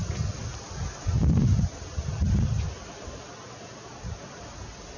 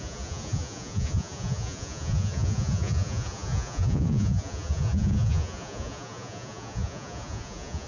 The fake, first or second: second